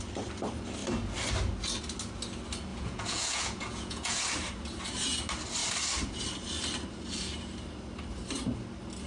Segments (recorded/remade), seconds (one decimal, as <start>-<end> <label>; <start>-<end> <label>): 0.0-2.7 recorded; 2.7-4.2 remade; 4.2-9.1 recorded